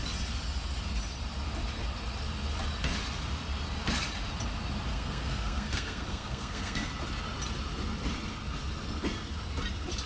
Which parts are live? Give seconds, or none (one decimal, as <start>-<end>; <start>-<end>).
0.0-4.9; 6.9-10.1